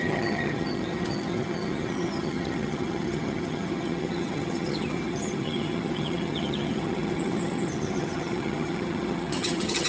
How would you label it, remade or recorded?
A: remade